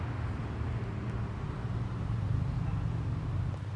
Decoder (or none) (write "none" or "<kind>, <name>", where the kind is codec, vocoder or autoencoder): none